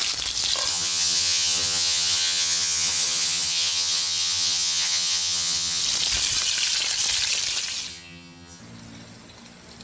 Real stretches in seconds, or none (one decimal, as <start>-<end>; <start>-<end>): 0.0-0.7; 5.8-7.9; 8.6-9.8